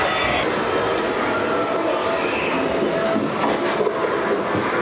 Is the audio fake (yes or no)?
no